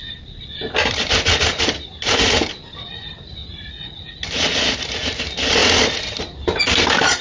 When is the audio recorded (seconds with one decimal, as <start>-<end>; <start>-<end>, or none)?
0.0-3.4; 4.0-7.2